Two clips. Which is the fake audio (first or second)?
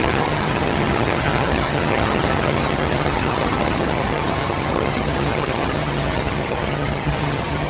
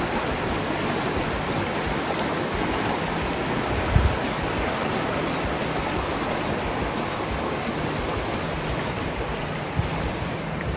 first